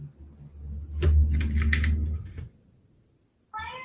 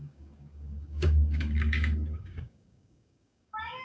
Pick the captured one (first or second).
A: first